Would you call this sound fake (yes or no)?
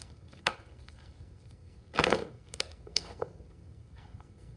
yes